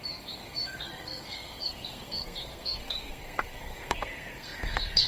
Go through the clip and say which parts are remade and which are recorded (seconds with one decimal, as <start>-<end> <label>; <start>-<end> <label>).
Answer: 0.0-5.1 remade